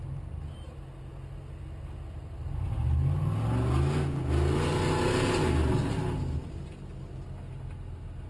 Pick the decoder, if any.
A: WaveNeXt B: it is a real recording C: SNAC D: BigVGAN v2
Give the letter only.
B